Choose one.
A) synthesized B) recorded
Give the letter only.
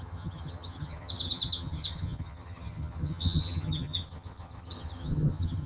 A